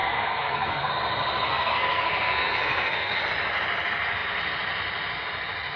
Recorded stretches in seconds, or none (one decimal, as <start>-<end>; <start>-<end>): 0.9-1.5; 3.2-5.8